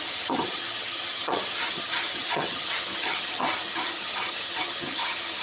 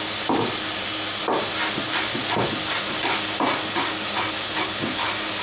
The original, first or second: second